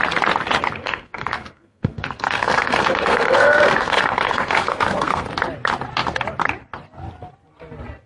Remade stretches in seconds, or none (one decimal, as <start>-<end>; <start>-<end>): 0.8-5.3